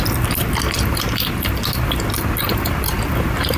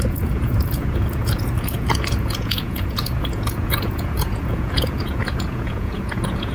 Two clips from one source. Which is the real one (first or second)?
first